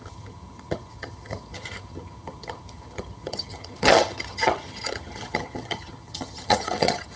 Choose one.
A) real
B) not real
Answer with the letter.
B